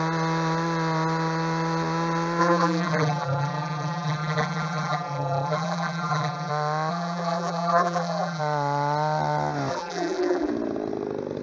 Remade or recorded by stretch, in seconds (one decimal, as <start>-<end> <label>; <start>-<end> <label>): 0.0-2.4 recorded; 2.4-6.5 remade; 6.5-6.9 recorded; 6.9-8.4 remade; 8.4-9.7 recorded; 9.7-10.5 remade; 10.5-11.4 recorded